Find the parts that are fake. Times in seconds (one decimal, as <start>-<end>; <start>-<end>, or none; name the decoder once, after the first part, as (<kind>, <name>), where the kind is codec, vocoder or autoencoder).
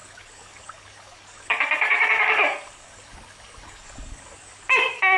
0.0-5.2 (codec, DAC)